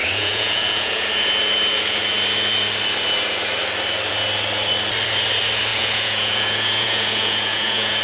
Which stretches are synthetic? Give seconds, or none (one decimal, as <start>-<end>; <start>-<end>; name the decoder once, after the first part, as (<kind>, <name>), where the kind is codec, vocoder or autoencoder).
0.0-1.0 (vocoder, Vocos); 5.7-8.0